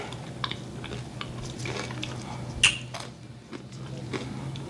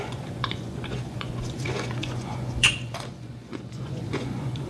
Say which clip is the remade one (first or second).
second